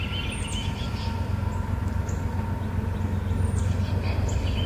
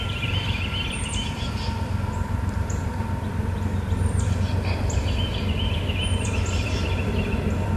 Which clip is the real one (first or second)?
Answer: first